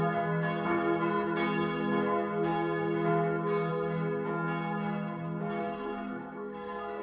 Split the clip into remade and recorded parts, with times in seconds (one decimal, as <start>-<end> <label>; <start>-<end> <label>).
0.0-5.6 recorded; 5.6-7.0 remade